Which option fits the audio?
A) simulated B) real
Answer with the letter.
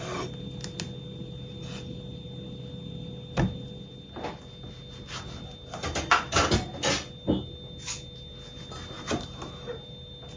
B